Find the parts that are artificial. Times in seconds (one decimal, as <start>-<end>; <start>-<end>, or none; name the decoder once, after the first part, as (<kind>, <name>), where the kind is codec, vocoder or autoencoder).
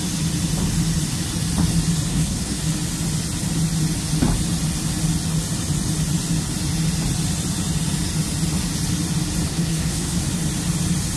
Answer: 2.1-2.6 (codec, SNAC); 9.5-10.2